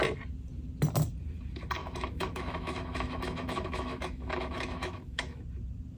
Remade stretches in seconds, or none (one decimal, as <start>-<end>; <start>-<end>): 1.8-5.4